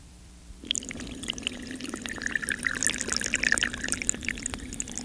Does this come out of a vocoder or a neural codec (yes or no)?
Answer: no